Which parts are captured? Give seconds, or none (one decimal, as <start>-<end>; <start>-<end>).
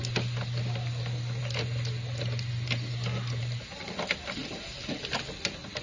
0.0-5.8